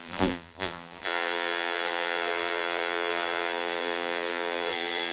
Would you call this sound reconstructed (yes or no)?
yes